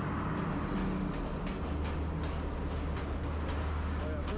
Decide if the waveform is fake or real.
real